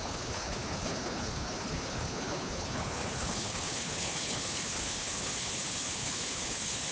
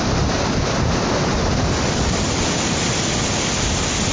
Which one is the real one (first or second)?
second